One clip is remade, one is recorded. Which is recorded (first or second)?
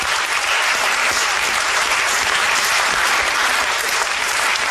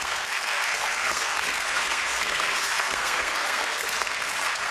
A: first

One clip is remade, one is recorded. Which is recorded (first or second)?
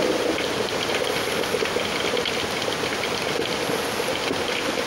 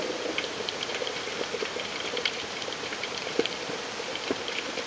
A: first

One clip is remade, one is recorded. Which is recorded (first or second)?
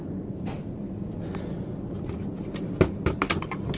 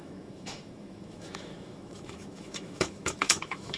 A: first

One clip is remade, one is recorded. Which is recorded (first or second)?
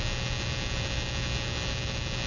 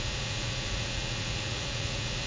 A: first